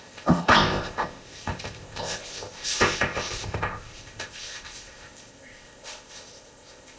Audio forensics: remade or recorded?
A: remade